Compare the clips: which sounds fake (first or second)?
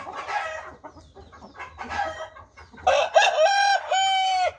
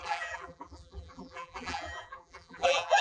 second